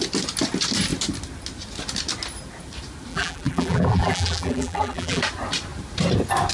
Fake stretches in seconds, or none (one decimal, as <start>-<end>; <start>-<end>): 3.1-5.2

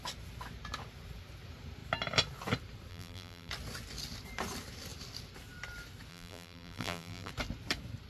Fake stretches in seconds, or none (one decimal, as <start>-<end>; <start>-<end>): 2.9-3.5; 6.1-7.3

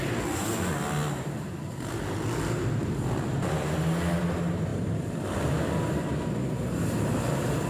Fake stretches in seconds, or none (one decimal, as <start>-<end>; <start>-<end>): 4.7-5.7